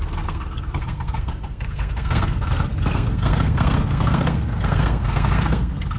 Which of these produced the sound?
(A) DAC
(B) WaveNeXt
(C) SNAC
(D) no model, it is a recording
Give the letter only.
C